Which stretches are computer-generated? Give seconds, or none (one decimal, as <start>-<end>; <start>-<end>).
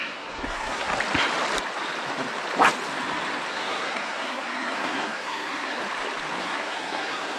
0.0-0.9; 3.5-5.8; 6.4-7.4